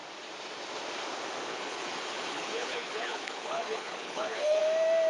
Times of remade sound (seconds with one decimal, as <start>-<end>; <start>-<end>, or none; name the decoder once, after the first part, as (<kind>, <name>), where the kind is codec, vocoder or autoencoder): 1.5-4.6 (codec, HILCodec)